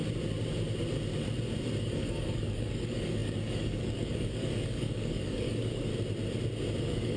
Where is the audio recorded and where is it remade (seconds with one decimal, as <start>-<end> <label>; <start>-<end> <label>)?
0.0-1.8 recorded; 1.8-5.9 remade; 5.9-6.8 recorded; 6.8-7.2 remade